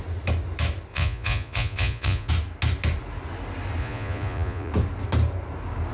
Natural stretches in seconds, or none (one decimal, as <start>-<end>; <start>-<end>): 0.0-0.9; 2.3-3.8; 4.7-5.9